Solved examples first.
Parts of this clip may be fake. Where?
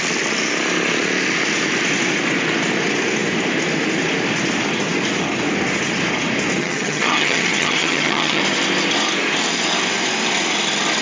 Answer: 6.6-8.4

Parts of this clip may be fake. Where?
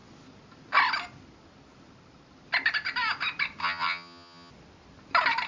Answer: 3.6-4.5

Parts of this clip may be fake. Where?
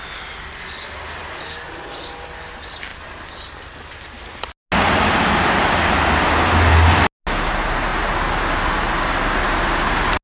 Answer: none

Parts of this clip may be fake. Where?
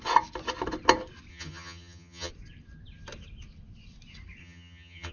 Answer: 1.3-2.3; 4.4-5.1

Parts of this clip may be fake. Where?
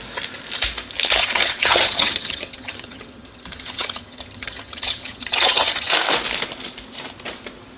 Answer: 1.2-5.9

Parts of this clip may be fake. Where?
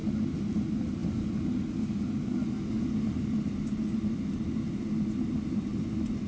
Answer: none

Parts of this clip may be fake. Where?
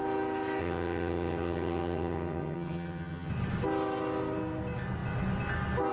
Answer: 0.6-3.3